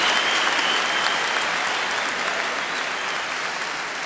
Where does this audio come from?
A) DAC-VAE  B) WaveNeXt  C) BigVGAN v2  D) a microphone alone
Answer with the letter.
D